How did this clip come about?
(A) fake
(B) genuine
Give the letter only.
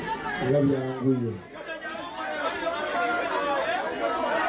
B